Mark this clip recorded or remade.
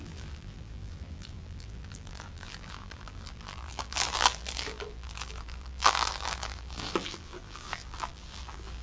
remade